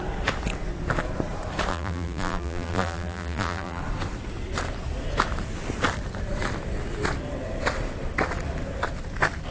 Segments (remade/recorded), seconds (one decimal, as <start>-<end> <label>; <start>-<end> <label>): 0.0-1.7 recorded; 1.7-3.8 remade; 3.8-9.5 recorded